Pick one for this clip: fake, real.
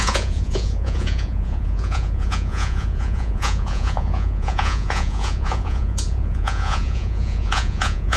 fake